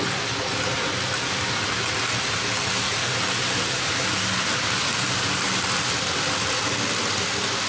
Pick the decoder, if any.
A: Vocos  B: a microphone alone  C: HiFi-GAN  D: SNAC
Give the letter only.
B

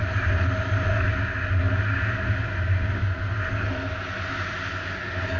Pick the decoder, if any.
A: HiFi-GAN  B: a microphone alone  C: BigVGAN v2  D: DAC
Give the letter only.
B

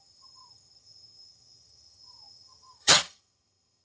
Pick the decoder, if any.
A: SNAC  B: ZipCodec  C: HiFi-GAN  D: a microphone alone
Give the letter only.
C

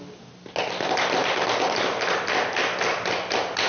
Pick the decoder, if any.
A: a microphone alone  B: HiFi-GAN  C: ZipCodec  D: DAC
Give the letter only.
A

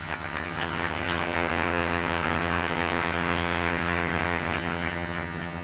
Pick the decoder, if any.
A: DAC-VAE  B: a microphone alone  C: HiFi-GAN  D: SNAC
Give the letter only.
C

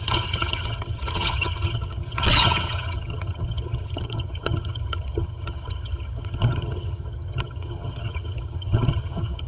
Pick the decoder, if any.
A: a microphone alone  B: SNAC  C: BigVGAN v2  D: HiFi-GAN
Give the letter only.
D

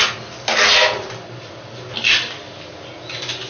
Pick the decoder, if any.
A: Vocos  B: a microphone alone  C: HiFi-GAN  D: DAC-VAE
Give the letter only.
B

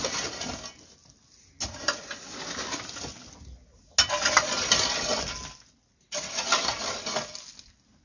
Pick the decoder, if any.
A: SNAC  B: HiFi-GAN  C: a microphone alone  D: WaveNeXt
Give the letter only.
C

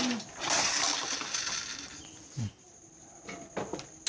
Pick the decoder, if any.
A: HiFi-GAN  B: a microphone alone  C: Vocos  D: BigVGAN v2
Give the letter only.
B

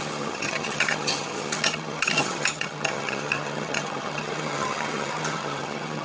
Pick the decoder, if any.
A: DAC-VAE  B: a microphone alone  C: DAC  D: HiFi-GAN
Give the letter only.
D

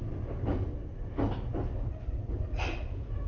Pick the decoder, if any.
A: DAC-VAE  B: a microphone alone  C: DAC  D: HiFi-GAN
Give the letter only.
B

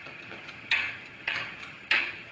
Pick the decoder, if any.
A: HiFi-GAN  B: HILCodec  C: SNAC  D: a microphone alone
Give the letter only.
A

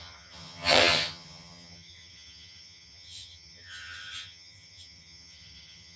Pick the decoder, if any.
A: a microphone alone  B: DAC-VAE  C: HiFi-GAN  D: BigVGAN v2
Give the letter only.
C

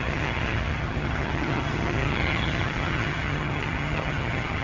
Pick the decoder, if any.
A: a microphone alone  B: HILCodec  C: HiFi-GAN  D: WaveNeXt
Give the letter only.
C